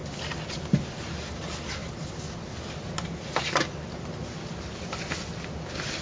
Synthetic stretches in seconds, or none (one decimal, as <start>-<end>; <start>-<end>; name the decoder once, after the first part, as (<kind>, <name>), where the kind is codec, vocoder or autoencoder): none